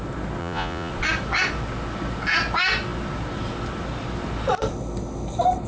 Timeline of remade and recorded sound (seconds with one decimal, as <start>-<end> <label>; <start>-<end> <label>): 0.0-0.4 recorded; 0.4-0.9 remade; 0.9-5.7 recorded